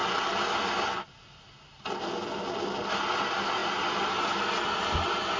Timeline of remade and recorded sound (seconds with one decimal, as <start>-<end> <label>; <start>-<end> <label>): 0.0-3.6 recorded; 3.6-4.6 remade; 4.6-5.4 recorded